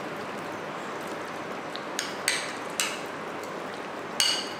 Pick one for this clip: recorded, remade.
recorded